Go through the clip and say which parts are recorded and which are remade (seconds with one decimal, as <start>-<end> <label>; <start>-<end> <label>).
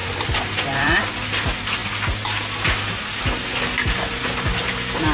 0.0-1.1 remade; 1.1-5.1 recorded